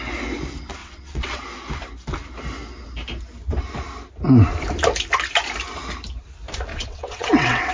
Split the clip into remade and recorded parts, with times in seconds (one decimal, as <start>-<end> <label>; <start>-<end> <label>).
0.0-0.8 recorded; 0.8-1.4 remade; 1.4-6.7 recorded; 6.7-7.7 remade